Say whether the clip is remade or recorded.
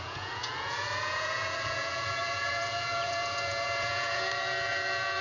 remade